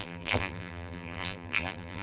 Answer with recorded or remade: remade